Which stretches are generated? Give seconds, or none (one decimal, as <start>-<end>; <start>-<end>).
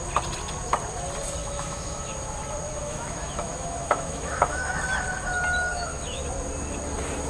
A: 1.4-2.1; 2.8-4.7; 5.7-6.2